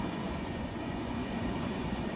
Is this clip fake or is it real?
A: fake